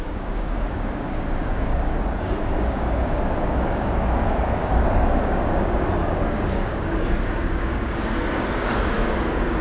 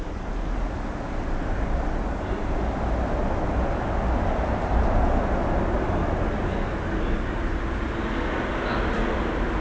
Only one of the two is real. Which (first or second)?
second